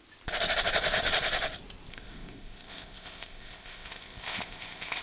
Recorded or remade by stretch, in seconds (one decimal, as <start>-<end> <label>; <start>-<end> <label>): 0.0-1.9 recorded; 1.9-5.0 remade